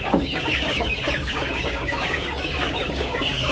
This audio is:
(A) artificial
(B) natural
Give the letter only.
A